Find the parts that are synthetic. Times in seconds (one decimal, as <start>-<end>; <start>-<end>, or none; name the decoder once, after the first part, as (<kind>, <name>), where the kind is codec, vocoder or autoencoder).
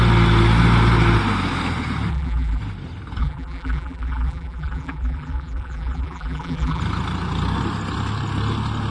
2.1-2.6 (vocoder, BigVGAN v2); 3.2-6.8